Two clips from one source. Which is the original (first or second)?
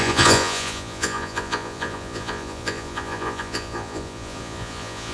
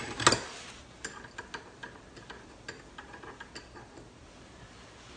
second